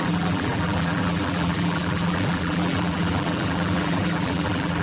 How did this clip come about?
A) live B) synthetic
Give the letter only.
B